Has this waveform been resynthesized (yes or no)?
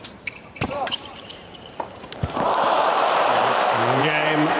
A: yes